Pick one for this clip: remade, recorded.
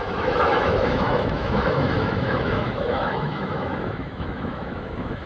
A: remade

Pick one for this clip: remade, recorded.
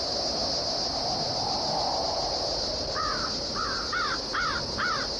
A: recorded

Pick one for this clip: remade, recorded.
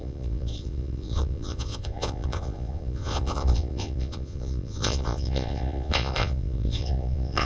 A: remade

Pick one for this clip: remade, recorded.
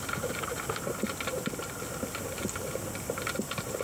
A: recorded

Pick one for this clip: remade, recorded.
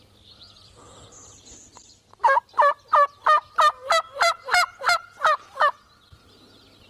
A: recorded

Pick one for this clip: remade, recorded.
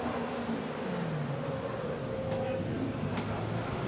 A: recorded